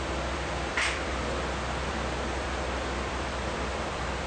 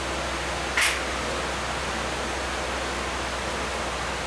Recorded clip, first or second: second